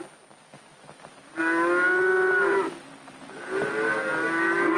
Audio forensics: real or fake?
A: real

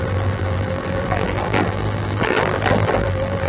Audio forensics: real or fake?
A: fake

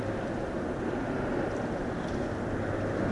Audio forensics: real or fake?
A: real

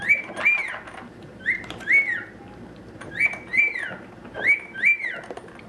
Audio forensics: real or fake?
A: fake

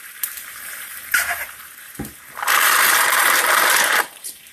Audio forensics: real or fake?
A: fake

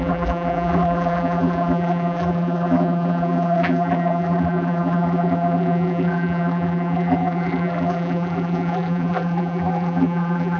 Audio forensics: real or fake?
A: fake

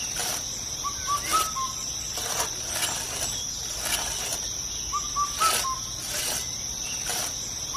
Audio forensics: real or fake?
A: real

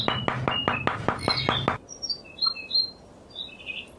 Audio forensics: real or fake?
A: real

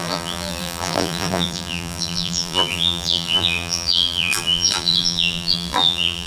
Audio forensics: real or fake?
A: fake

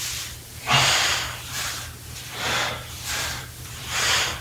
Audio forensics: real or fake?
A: fake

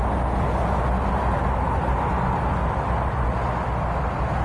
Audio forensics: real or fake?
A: real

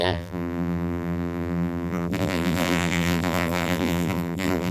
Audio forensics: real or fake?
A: fake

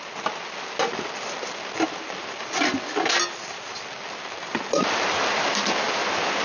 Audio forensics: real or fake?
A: real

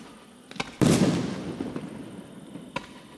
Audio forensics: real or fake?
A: real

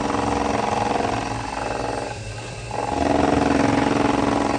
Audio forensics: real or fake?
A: real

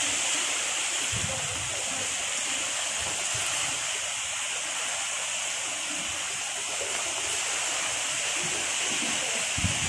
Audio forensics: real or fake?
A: real